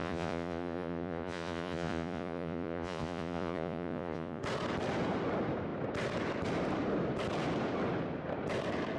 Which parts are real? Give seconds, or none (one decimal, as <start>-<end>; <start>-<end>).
4.4-9.0